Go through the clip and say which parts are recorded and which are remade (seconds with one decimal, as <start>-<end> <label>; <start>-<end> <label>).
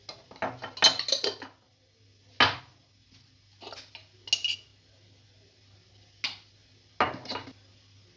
0.0-8.2 recorded